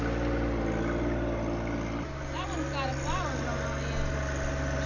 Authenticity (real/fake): real